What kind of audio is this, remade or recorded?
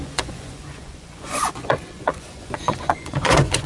remade